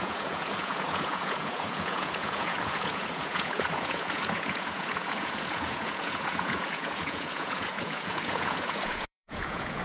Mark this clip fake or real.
fake